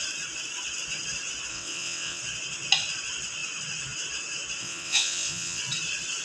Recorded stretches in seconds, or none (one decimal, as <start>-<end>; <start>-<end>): 0.0-1.5; 2.2-4.6; 5.6-6.2